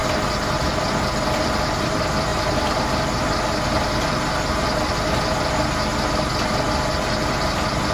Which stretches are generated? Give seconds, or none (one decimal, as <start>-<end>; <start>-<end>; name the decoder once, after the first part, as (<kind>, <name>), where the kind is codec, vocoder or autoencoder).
0.6-2.3 (vocoder, BigVGAN v2); 6.7-7.9